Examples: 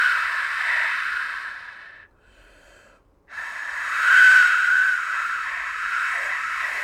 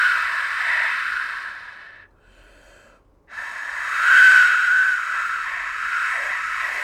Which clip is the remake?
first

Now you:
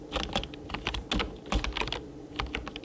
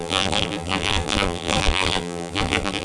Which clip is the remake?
second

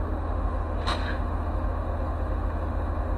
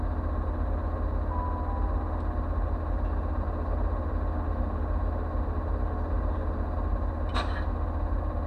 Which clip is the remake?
first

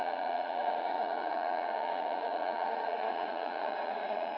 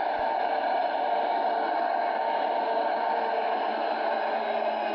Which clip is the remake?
first